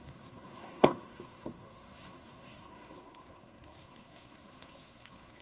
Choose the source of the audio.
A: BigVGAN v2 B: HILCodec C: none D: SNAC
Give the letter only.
D